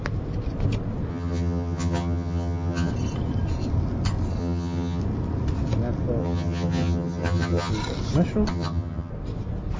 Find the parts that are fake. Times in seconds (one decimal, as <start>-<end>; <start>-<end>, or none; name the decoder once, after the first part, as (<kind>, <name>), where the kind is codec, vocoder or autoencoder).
1.1-2.9 (vocoder, HiFi-GAN); 4.4-5.0; 6.2-7.7; 8.5-9.1